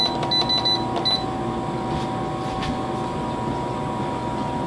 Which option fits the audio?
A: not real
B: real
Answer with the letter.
B